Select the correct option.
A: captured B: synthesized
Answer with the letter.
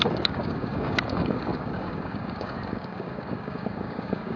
B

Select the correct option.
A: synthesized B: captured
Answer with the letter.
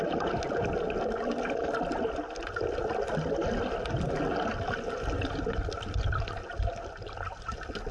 B